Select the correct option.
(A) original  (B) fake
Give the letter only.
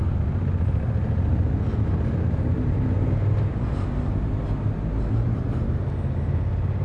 A